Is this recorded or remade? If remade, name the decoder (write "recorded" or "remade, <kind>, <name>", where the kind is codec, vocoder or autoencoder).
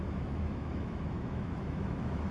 remade, autoencoder, DAC-VAE